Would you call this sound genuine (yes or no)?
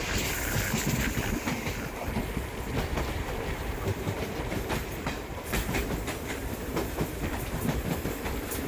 yes